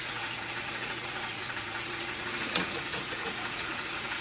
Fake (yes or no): yes